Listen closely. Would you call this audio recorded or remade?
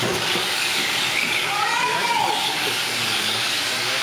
remade